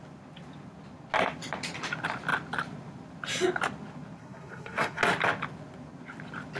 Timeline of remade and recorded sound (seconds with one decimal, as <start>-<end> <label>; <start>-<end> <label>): 0.0-4.2 recorded; 4.2-5.0 remade; 5.0-6.6 recorded